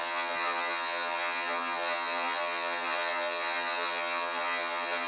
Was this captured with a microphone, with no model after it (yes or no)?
no